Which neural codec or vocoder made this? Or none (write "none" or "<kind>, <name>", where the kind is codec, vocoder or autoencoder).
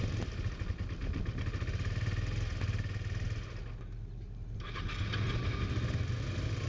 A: none